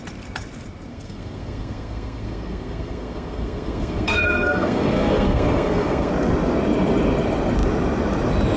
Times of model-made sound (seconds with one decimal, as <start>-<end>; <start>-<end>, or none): 0.9-6.1